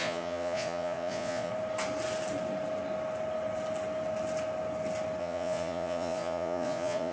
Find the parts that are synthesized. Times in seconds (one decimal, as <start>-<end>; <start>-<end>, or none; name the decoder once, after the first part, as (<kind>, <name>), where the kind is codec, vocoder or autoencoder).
0.0-1.5 (vocoder, Vocos); 5.2-7.1